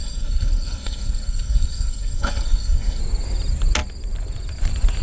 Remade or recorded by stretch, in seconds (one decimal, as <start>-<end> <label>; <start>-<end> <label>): 0.0-3.0 remade; 3.0-5.0 recorded